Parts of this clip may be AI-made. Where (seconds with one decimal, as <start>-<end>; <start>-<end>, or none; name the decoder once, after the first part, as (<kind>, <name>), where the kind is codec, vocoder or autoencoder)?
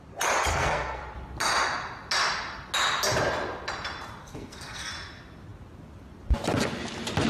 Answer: 0.5-1.0 (codec, SNAC); 4.2-4.9